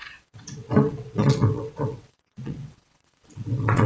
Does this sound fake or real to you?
fake